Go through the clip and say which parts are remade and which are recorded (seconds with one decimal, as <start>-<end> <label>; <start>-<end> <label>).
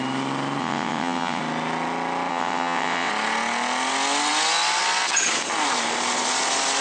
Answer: 0.0-0.6 recorded; 0.6-1.4 remade; 1.4-2.3 recorded; 2.3-3.1 remade; 3.1-6.8 recorded